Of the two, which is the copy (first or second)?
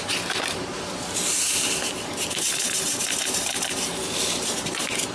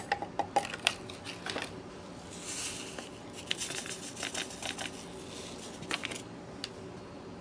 first